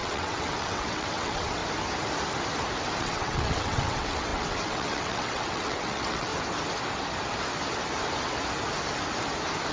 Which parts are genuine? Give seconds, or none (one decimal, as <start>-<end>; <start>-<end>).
1.6-3.0; 6.3-9.7